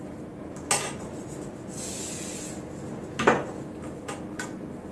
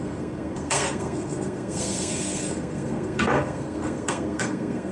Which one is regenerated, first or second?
second